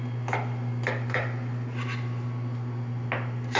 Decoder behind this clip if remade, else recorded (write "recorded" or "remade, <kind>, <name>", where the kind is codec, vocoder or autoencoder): recorded